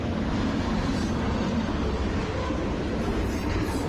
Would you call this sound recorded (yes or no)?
yes